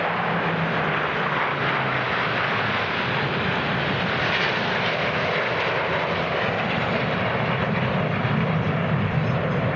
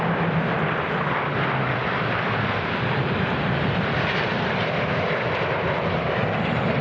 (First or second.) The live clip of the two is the first